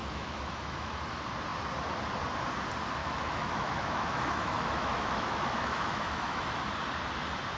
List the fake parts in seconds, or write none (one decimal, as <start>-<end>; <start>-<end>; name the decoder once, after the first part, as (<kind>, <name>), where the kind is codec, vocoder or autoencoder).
0.0-1.0 (autoencoder, DAC-VAE); 3.0-6.6